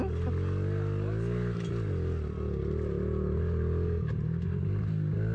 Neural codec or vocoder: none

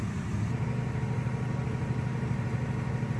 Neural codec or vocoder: none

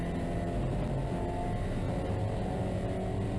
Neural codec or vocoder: none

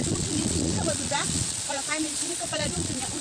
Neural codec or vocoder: vocoder, Vocos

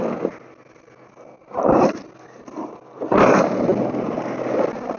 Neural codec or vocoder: none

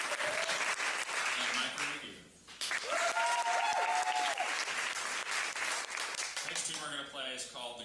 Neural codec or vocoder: none